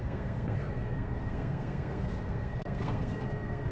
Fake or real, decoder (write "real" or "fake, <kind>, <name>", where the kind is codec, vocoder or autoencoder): fake, codec, SNAC